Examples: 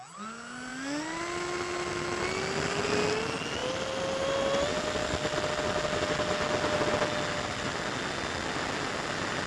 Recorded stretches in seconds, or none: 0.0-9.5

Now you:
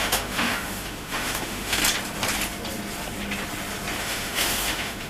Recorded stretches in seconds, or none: 1.8-4.0

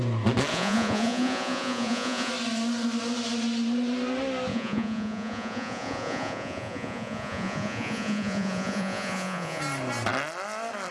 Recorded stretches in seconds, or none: 0.0-0.5; 2.3-4.5; 9.6-10.9

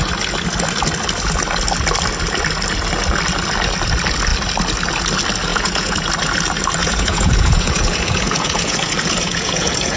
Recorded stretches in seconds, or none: 0.0-5.5; 6.1-6.8